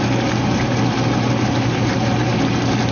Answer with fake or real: real